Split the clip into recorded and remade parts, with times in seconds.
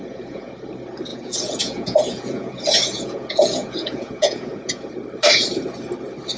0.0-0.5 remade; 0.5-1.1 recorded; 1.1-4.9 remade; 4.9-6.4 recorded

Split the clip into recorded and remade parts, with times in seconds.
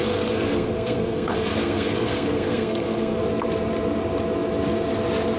0.0-3.2 remade; 3.2-5.4 recorded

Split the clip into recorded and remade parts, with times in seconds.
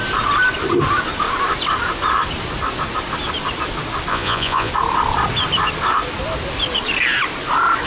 0.0-4.1 recorded; 4.1-4.7 remade; 4.7-7.9 recorded